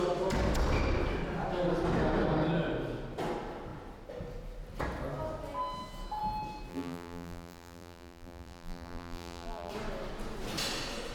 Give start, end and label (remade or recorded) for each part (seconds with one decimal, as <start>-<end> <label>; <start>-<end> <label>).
0.0-6.7 recorded; 6.7-9.7 remade; 9.7-11.1 recorded